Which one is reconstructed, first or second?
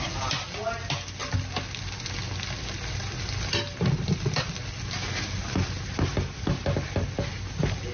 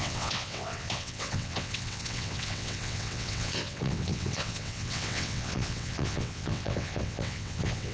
second